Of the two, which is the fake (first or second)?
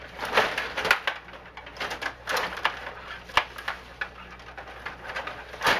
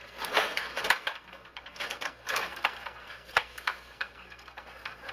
second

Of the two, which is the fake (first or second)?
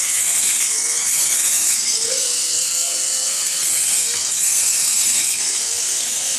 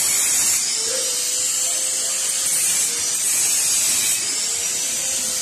first